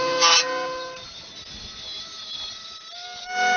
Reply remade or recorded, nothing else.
recorded